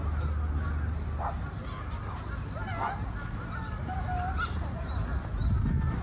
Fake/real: real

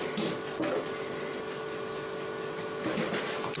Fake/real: real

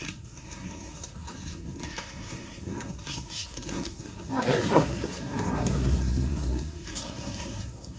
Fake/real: fake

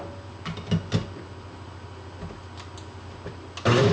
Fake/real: real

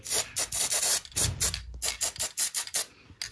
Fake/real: real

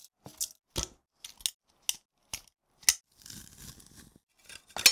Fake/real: real